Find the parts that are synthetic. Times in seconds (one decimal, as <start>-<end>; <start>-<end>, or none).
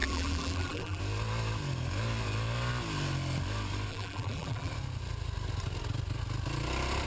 0.0-1.0; 3.9-4.7